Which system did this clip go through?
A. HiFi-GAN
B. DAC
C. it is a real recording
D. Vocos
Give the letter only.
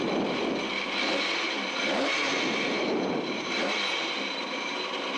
C